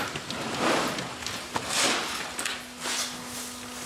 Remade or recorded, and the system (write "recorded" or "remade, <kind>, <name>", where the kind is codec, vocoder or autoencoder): recorded